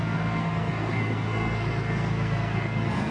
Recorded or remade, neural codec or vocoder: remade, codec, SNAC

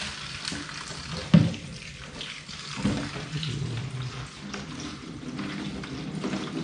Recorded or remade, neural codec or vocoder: recorded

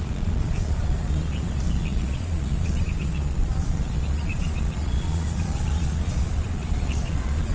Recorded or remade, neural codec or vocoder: remade, vocoder, Vocos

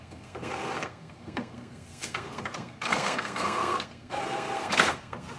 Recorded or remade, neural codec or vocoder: remade, codec, SNAC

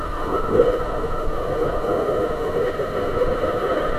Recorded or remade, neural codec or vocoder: remade, autoencoder, DAC-VAE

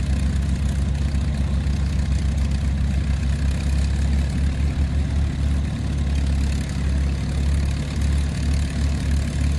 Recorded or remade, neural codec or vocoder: recorded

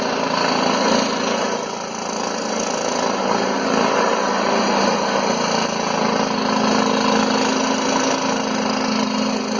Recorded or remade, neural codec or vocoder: recorded